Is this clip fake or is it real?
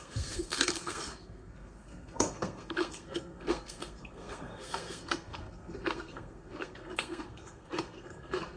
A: fake